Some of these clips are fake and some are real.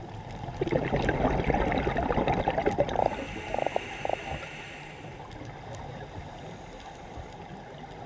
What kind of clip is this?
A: real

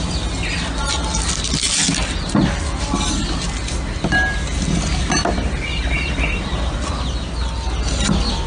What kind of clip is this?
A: real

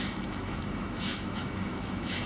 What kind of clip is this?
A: fake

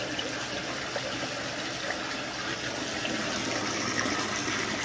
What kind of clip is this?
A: real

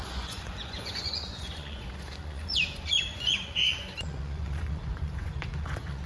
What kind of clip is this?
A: fake